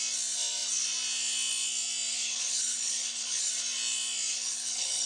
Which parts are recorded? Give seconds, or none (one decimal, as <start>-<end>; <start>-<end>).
0.0-2.1; 3.5-4.3